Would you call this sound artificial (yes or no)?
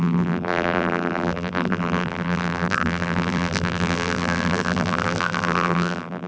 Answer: yes